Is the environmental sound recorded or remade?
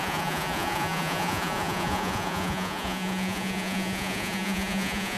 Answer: remade